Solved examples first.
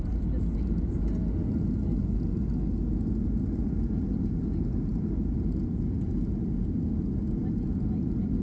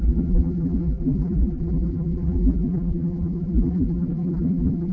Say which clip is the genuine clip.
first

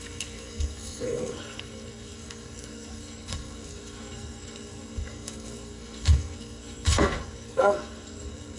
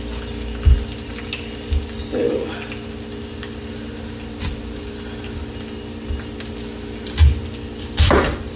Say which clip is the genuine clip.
second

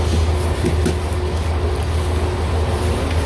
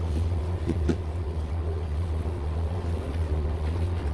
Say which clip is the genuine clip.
first